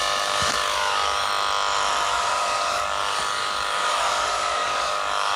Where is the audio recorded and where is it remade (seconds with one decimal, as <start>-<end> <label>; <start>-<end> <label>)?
0.0-1.3 remade; 1.3-2.1 recorded; 2.1-5.4 remade